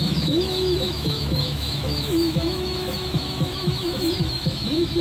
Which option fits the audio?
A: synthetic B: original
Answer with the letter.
A